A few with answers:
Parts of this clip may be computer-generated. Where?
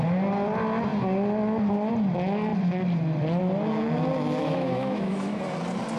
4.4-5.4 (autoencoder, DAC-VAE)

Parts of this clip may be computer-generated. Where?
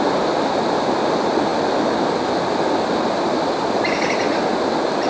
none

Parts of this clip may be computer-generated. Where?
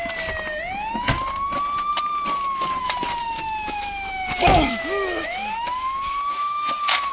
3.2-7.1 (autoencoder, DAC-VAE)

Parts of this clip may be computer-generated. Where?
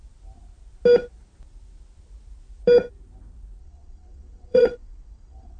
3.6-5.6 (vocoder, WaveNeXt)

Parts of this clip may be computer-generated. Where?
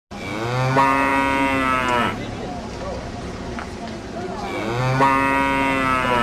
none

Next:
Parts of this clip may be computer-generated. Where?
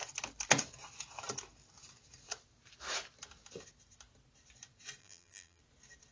5.0-5.6 (vocoder, BigVGAN v2)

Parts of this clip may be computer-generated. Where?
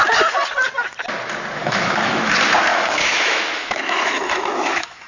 1.6-2.3 (autoencoder, DAC-VAE); 2.7-5.1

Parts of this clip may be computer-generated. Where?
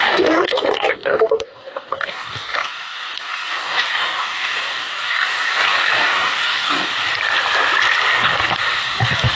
0.0-6.9 (codec, DAC); 8.8-9.3